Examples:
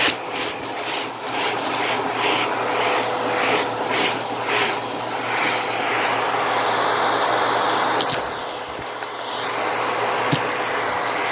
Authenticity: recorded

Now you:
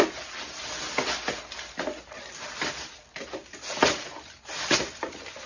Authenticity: recorded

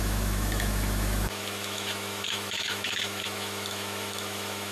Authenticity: remade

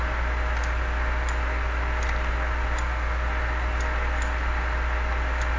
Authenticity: recorded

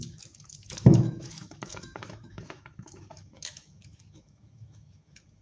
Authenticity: remade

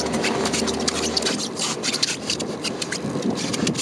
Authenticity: recorded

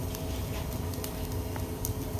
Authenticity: recorded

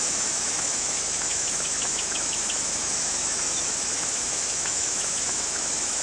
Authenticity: remade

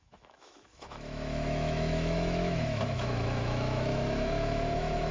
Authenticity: remade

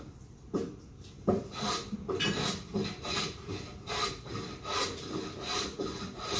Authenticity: recorded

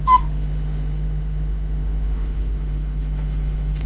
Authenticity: remade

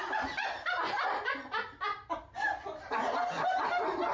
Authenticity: recorded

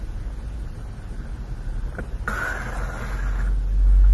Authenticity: recorded